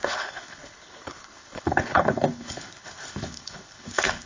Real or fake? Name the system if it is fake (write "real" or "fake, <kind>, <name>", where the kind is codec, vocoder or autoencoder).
fake, codec, HILCodec